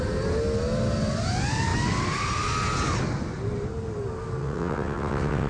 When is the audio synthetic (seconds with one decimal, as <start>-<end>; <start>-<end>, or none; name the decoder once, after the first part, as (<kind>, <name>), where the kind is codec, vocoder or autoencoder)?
4.4-5.5 (vocoder, WaveNeXt)